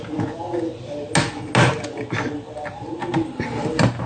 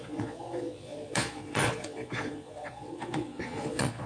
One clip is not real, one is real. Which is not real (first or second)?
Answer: second